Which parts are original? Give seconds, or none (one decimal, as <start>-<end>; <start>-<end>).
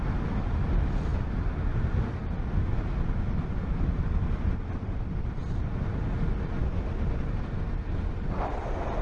0.0-9.0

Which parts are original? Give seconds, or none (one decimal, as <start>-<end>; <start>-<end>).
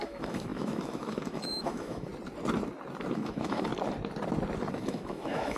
2.1-3.1; 3.7-4.7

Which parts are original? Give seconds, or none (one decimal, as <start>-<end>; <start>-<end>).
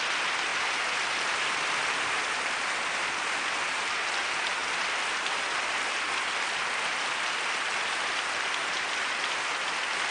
0.0-10.1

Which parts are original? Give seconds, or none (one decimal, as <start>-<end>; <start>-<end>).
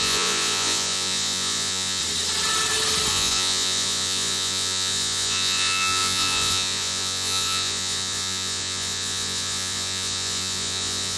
2.0-3.1